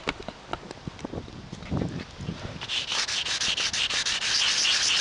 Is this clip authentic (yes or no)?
yes